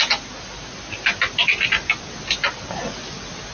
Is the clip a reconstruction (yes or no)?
no